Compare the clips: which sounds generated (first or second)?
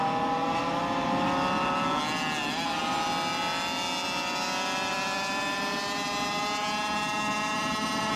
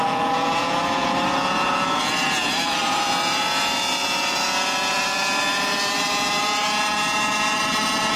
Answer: second